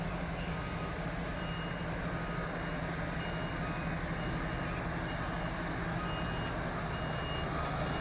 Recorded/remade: recorded